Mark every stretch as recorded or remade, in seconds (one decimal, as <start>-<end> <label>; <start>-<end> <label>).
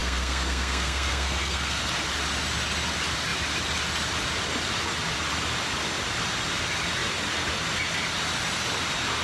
0.0-1.8 remade; 1.8-9.2 recorded